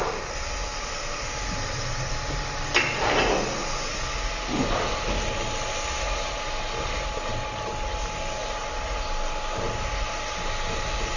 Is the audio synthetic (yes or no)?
no